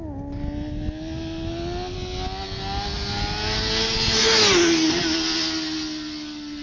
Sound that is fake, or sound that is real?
real